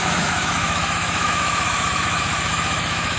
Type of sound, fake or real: fake